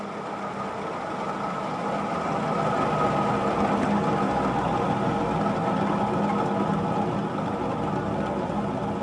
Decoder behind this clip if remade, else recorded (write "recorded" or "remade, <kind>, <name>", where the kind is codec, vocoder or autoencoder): recorded